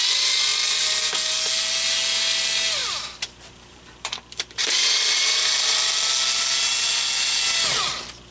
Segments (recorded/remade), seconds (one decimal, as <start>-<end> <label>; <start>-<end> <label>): 0.0-2.8 recorded; 2.8-6.1 remade; 6.1-8.3 recorded